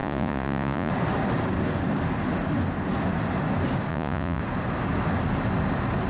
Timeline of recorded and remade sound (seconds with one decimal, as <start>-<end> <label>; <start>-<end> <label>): 0.0-0.9 remade; 0.9-3.9 recorded; 3.9-4.4 remade; 4.4-6.1 recorded